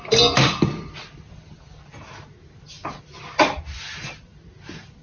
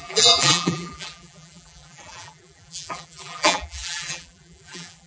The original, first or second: first